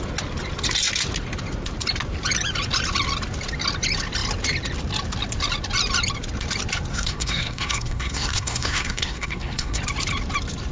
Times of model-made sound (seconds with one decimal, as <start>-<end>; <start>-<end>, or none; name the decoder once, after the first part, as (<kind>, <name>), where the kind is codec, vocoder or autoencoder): 6.9-9.8 (codec, SNAC)